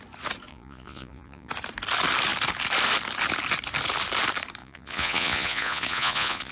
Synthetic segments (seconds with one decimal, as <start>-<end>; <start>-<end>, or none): 0.5-1.5; 4.6-6.5